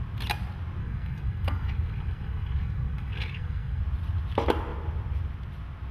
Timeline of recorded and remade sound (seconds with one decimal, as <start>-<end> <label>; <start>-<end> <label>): 0.0-0.8 recorded; 0.8-3.8 remade; 3.8-5.9 recorded